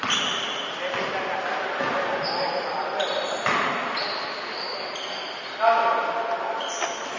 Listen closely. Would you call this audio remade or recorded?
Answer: recorded